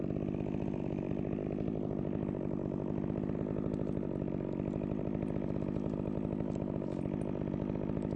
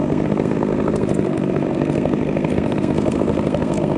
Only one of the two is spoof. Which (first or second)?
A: second